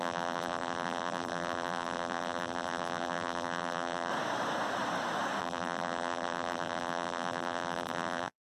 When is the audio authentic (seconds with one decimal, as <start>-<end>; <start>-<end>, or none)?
4.1-5.4